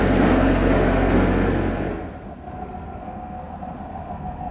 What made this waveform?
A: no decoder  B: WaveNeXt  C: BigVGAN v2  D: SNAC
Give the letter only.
D